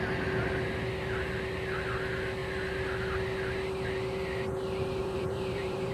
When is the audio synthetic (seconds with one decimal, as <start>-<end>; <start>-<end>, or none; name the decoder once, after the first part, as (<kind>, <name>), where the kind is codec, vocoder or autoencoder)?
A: 5.0-5.9 (vocoder, BigVGAN v2)